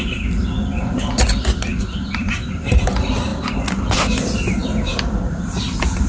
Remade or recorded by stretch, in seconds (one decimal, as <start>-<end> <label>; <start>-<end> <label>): 0.0-6.1 recorded